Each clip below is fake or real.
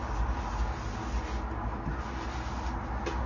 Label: real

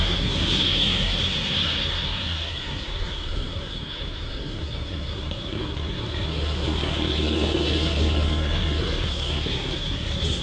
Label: fake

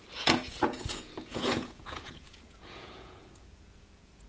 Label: fake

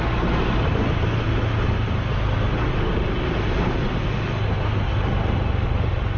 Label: real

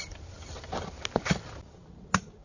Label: real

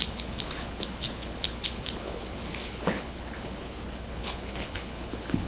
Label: fake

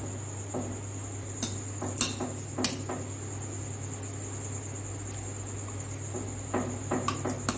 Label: real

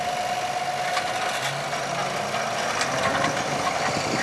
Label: real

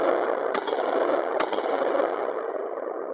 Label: fake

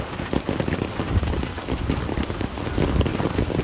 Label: real